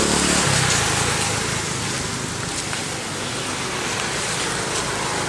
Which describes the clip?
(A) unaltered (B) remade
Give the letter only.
A